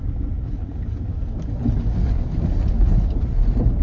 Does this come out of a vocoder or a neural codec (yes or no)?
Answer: no